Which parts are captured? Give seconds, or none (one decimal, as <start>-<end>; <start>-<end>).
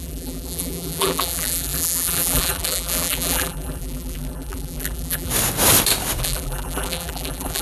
5.3-6.2